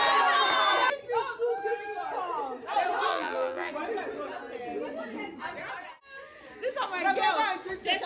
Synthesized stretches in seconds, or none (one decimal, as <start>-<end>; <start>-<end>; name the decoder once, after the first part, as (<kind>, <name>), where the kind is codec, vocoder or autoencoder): 3.1-3.7 (vocoder, BigVGAN v2)